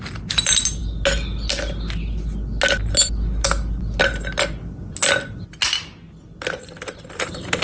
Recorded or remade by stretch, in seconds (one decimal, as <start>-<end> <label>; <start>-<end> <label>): 0.0-7.6 recorded